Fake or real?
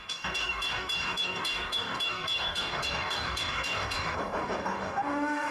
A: fake